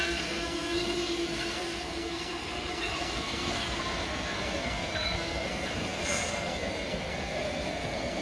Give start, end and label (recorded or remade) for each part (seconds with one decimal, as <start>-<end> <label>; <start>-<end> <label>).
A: 0.0-8.2 remade